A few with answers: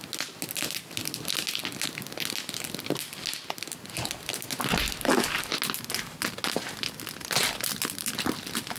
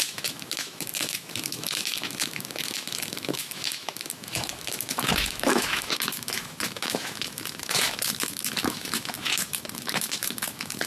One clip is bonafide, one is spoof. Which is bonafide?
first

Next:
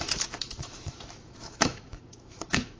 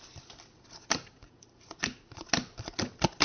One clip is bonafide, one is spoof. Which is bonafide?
second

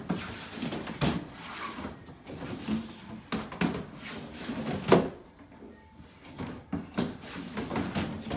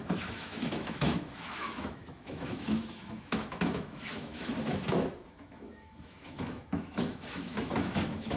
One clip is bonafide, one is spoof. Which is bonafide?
first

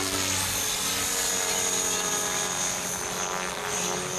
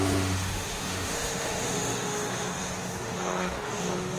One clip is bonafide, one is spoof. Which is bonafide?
first